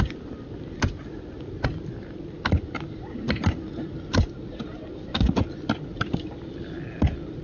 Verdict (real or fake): real